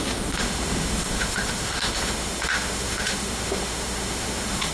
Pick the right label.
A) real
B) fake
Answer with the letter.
B